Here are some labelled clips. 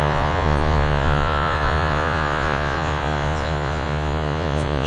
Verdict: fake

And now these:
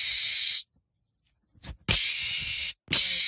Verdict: real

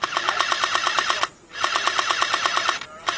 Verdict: real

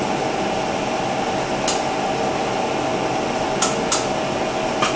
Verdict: real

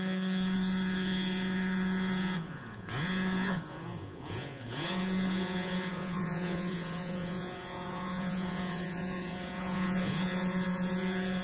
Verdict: fake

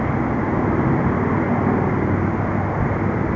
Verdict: real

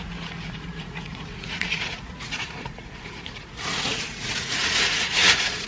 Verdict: fake